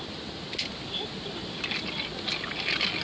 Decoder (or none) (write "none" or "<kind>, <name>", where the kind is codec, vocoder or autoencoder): none